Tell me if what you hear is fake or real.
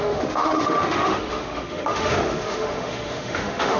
fake